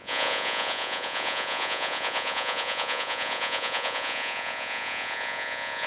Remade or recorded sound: remade